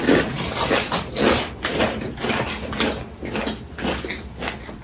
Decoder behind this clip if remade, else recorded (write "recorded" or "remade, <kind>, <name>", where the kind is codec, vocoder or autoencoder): recorded